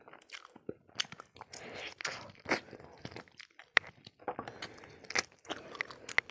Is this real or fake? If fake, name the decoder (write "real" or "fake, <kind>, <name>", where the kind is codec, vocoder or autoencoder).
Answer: real